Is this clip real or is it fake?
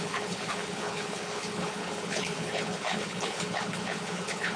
fake